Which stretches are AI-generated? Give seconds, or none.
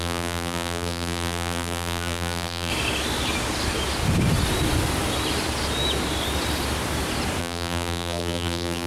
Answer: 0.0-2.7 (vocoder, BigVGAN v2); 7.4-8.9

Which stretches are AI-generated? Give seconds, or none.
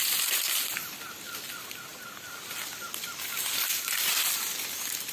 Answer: none